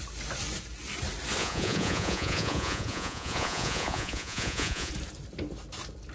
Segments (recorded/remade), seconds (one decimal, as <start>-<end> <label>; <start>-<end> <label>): 0.0-1.4 recorded; 1.4-4.9 remade; 4.9-6.1 recorded